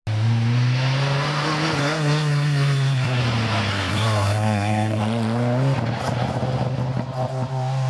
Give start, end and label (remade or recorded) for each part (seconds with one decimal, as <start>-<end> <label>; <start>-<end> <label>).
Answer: 0.0-1.8 recorded; 1.8-3.2 remade; 3.2-3.7 recorded; 3.7-5.0 remade; 5.0-7.9 recorded